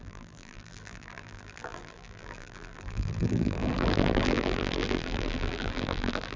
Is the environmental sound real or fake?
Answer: fake